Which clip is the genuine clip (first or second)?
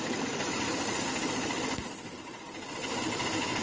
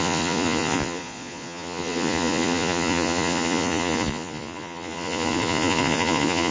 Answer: first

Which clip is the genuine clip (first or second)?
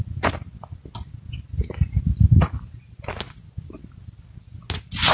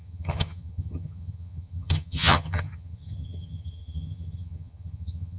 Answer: first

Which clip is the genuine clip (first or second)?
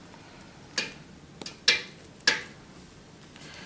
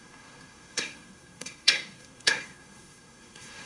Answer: first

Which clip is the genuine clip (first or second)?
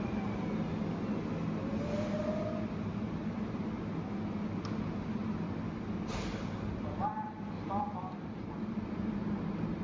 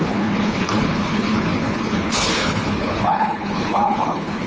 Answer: first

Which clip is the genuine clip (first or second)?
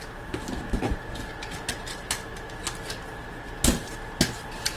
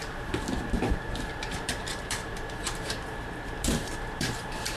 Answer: first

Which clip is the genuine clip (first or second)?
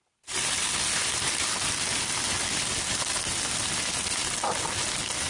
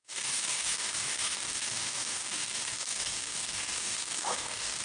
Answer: first